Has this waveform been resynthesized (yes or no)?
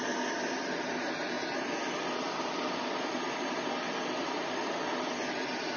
no